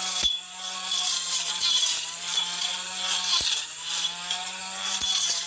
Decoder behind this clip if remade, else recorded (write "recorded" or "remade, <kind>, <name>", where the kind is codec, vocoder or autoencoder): remade, vocoder, BigVGAN v2